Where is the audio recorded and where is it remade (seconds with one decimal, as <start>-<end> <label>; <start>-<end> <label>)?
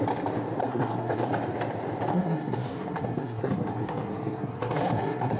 0.0-0.6 recorded; 0.6-1.3 remade; 1.3-2.1 recorded; 2.1-5.4 remade